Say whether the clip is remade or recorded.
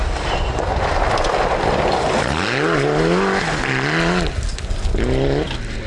recorded